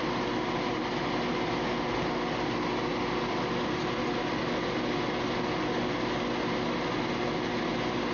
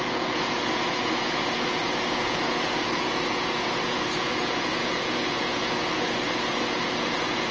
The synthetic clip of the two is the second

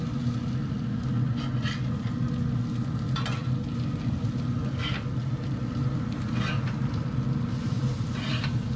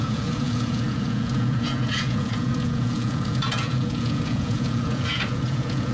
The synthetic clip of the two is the second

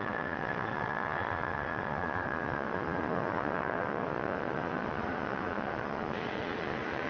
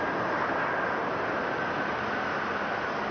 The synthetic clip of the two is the first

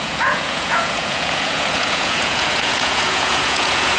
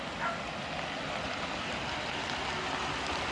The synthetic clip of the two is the first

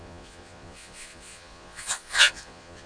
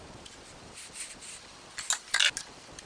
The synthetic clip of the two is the first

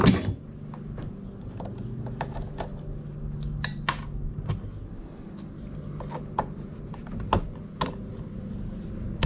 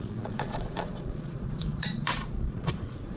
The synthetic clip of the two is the second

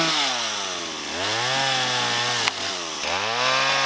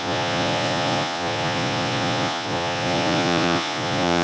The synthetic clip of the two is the second